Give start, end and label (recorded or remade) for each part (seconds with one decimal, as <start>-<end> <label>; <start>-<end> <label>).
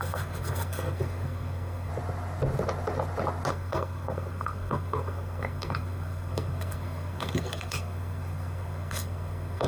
0.0-1.9 remade; 1.9-3.5 recorded; 3.5-9.7 remade